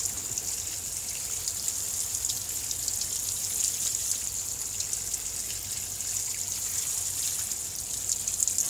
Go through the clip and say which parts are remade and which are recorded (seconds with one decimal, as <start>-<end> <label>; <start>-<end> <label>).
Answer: 0.0-3.9 recorded; 3.9-4.8 remade; 4.8-6.3 recorded; 6.3-7.5 remade; 7.5-8.7 recorded